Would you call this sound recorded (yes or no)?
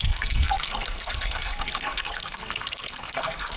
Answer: no